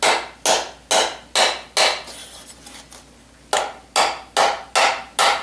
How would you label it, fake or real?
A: real